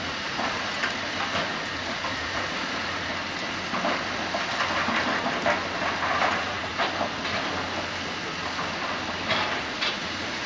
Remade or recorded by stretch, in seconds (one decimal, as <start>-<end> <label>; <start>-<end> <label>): 0.0-0.8 remade; 0.8-1.4 recorded; 1.4-3.1 remade; 3.1-6.2 recorded; 6.2-6.7 remade; 6.7-9.6 recorded; 9.6-10.5 remade